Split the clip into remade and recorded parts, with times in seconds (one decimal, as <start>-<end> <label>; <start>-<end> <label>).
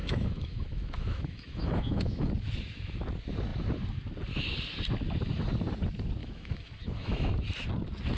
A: 0.0-2.3 remade; 2.3-6.2 recorded; 6.2-7.3 remade; 7.3-8.2 recorded